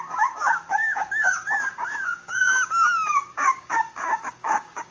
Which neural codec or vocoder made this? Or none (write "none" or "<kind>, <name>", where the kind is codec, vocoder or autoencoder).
codec, DAC